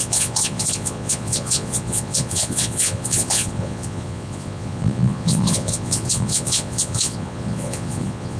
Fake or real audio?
fake